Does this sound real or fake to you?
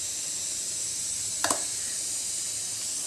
real